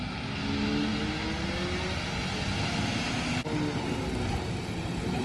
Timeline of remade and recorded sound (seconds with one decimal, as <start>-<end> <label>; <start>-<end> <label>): 0.0-5.2 recorded